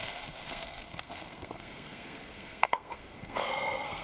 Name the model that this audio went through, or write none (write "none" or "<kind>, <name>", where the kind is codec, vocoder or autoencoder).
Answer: codec, SNAC